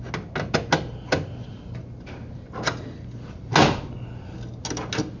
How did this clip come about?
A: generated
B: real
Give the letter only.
B